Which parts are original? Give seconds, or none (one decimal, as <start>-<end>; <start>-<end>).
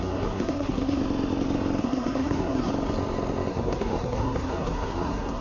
1.0-1.8; 2.7-3.5